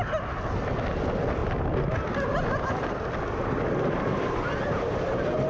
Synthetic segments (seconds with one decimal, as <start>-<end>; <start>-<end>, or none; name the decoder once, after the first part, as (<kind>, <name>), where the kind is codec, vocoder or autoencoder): none

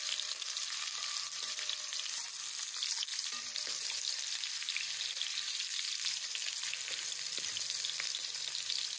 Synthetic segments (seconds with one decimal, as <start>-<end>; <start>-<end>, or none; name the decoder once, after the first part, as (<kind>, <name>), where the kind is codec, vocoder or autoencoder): 3.1-4.7 (vocoder, BigVGAN v2)